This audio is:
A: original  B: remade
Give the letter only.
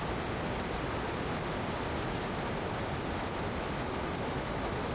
A